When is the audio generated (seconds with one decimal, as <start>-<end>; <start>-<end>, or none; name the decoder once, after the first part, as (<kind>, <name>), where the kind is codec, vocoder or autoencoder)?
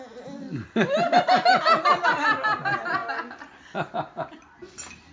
none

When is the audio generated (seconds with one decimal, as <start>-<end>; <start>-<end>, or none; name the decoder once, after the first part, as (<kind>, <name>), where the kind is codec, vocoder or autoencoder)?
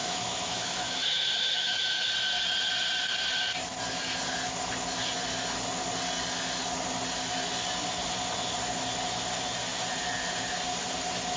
0.0-2.1 (autoencoder, DAC-VAE)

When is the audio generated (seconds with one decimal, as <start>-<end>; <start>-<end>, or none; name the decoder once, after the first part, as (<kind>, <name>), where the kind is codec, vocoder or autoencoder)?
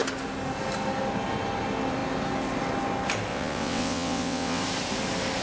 3.3-4.6 (vocoder, WaveNeXt)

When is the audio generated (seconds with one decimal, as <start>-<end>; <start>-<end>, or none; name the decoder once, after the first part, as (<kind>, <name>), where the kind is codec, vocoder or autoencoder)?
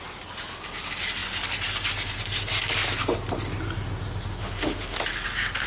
4.4-5.0 (autoencoder, DAC-VAE)